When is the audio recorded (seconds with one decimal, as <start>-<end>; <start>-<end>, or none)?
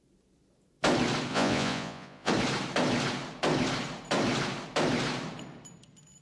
0.0-1.3; 2.3-6.2